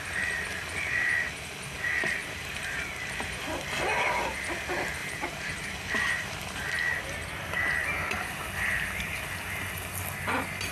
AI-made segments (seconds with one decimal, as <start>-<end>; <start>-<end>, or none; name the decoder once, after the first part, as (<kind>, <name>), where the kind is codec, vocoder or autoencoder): 2.2-2.9 (vocoder, BigVGAN v2); 5.0-5.7